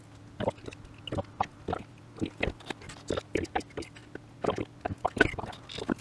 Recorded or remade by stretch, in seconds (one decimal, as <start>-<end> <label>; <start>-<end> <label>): 0.0-6.0 recorded